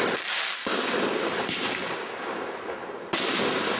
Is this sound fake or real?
real